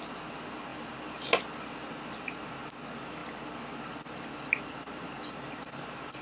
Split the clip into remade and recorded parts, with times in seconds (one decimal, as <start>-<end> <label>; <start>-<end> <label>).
0.0-6.2 recorded